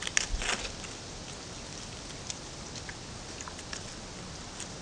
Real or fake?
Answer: real